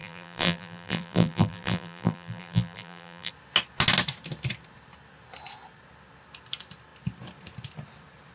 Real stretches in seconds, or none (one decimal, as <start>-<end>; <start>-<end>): 3.3-8.3